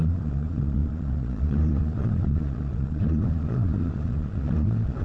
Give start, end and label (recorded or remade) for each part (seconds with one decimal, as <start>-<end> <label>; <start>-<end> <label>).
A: 0.0-5.0 remade